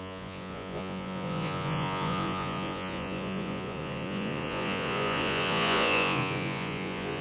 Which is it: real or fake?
fake